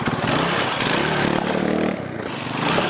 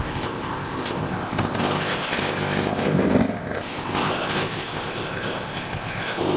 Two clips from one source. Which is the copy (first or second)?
second